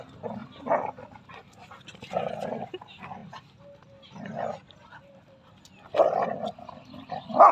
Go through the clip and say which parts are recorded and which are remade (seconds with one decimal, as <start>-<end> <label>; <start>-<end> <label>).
0.0-7.5 recorded